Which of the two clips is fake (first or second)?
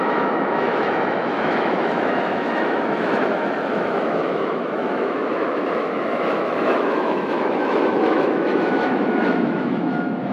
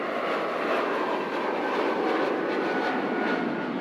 first